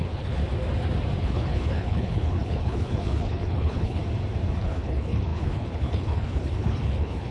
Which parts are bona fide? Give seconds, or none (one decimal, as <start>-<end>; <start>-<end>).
0.4-1.2; 4.0-4.6